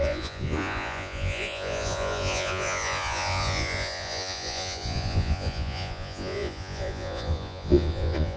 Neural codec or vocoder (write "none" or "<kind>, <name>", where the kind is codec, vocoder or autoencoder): vocoder, Vocos